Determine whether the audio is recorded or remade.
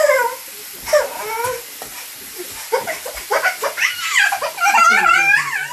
recorded